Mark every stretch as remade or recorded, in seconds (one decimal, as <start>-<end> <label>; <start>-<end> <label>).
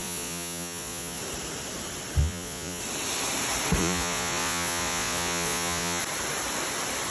0.0-1.2 remade; 1.2-2.2 recorded; 2.2-2.8 remade; 2.8-3.8 recorded; 3.8-6.0 remade; 6.0-7.1 recorded